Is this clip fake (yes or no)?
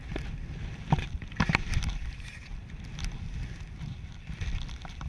no